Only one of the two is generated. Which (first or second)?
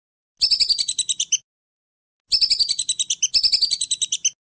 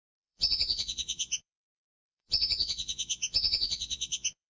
second